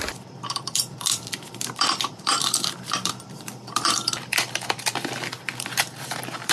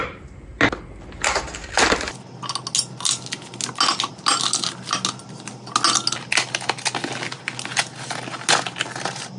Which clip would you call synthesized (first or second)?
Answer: first